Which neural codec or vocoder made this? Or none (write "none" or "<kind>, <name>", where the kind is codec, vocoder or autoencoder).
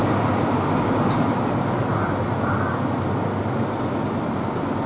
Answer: none